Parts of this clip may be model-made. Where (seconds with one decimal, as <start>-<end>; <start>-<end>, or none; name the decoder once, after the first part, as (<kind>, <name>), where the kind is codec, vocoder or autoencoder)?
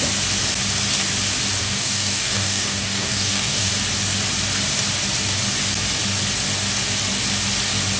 1.6-3.7 (codec, DAC)